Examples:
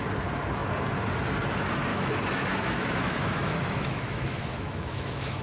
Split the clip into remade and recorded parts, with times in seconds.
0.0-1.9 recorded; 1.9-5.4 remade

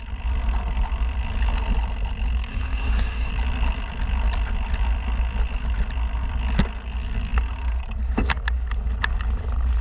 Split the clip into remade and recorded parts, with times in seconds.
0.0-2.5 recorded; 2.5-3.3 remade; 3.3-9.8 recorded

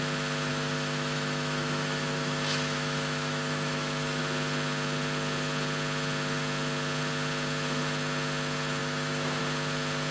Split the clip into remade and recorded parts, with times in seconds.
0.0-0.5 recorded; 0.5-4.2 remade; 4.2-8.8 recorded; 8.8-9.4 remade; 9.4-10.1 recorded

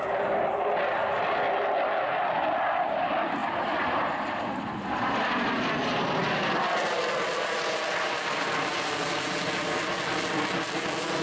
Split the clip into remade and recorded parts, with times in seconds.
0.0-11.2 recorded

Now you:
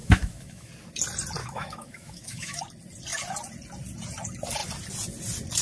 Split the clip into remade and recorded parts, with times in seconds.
0.0-0.7 remade; 0.7-1.4 recorded; 1.4-2.6 remade; 2.6-5.6 recorded

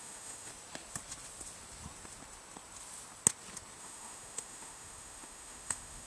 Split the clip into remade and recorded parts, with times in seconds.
0.0-0.5 remade; 0.5-3.8 recorded; 3.8-6.1 remade

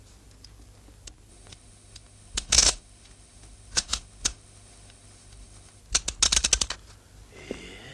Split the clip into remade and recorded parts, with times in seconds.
0.0-1.3 recorded; 1.3-5.8 remade; 5.8-7.9 recorded